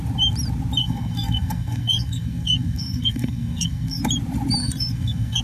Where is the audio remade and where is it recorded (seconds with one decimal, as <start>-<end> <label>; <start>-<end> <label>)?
0.0-0.8 recorded; 0.8-4.0 remade; 4.0-4.6 recorded; 4.6-5.4 remade